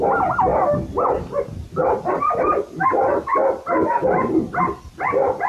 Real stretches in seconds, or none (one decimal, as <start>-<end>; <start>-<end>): 0.0-5.5